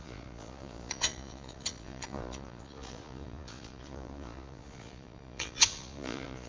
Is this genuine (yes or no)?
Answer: no